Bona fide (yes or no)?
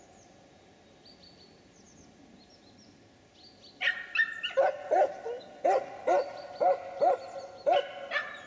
yes